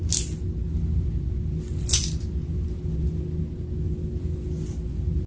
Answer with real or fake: real